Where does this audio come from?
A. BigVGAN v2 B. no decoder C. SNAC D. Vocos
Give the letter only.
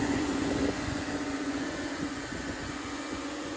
D